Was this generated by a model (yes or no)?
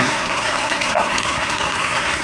yes